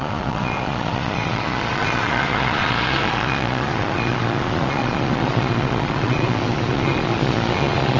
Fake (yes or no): yes